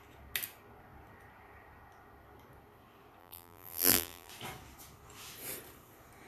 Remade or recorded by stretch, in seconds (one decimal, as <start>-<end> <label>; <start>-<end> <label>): 0.0-3.2 recorded; 3.2-4.3 remade; 4.3-6.3 recorded